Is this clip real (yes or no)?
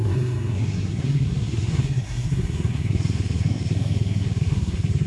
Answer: no